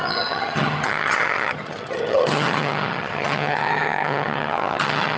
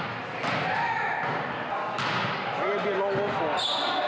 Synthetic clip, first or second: first